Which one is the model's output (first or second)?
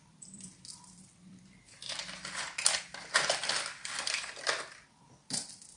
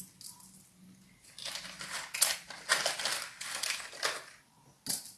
first